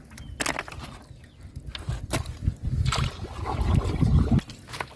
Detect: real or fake real